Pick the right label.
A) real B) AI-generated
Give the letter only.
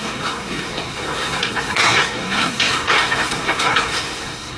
B